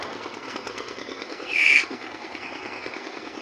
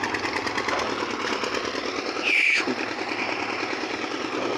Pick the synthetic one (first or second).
first